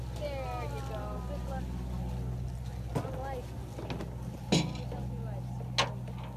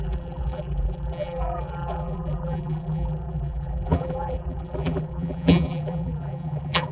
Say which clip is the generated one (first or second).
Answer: second